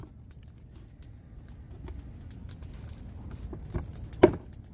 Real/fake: real